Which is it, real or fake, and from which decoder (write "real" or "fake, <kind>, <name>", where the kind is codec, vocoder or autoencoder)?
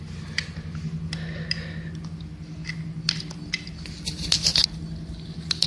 real